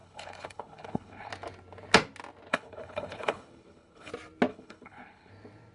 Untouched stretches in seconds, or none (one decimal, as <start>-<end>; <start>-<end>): 1.3-2.5; 4.1-4.5; 5.3-5.7